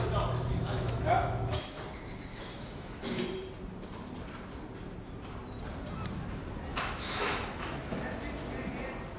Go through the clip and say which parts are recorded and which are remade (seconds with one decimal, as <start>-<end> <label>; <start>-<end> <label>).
0.0-0.5 recorded; 0.5-1.8 remade; 1.8-2.3 recorded; 2.3-3.2 remade; 3.2-6.7 recorded; 6.7-8.0 remade; 8.0-9.2 recorded